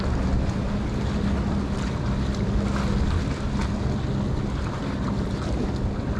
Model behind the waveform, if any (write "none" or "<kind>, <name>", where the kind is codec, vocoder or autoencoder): none